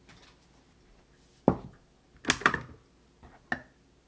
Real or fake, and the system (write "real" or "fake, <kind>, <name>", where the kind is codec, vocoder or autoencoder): real